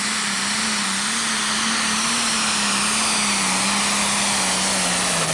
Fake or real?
real